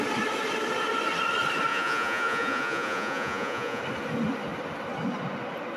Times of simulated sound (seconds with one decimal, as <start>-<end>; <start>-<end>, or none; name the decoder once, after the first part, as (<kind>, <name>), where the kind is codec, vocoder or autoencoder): 1.7-3.8 (vocoder, Vocos)